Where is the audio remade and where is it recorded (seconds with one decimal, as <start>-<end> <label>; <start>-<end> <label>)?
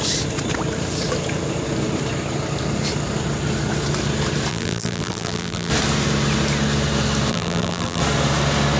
0.0-4.5 recorded; 4.5-5.7 remade; 5.7-7.3 recorded; 7.3-8.0 remade; 8.0-8.8 recorded